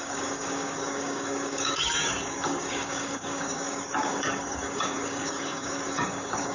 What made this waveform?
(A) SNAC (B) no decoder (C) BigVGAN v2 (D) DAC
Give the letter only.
D